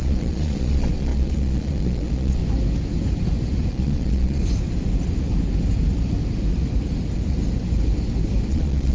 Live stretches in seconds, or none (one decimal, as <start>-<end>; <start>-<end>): 2.4-3.7; 4.4-8.5